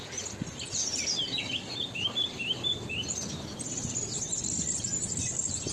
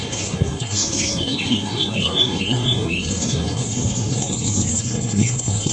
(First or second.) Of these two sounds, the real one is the first